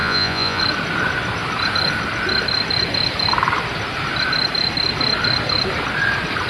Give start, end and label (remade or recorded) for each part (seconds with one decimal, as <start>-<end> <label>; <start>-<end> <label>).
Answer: 0.0-0.6 remade; 0.6-6.5 recorded